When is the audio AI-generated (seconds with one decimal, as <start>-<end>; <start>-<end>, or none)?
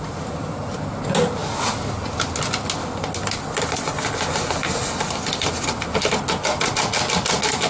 none